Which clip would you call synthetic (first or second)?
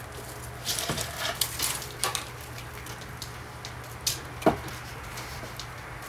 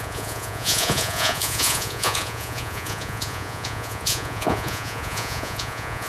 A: second